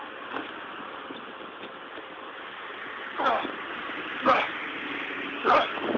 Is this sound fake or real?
real